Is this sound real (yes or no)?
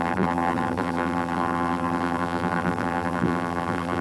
no